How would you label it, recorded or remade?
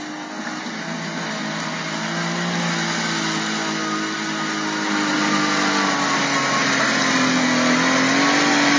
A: recorded